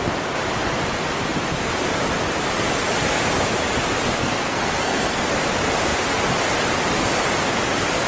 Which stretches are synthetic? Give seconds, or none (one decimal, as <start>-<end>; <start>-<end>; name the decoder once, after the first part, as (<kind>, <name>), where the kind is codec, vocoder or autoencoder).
4.2-5.2 (codec, SNAC)